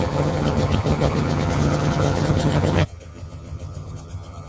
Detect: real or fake fake